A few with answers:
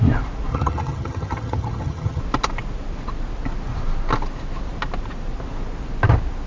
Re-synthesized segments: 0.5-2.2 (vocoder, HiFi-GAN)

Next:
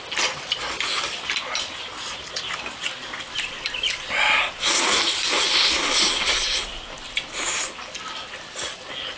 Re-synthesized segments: none

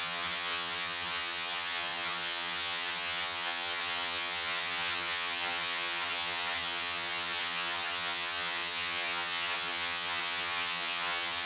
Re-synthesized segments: 0.0-11.5 (vocoder, HiFi-GAN)